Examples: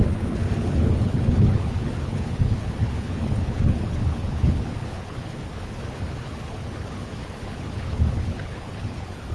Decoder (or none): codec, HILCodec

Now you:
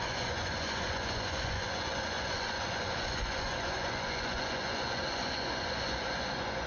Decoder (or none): vocoder, Vocos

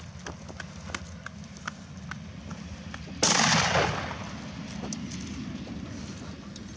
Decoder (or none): none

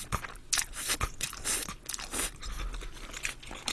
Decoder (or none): none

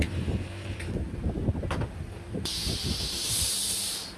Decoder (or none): vocoder, BigVGAN v2